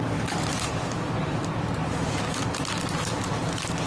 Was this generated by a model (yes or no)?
no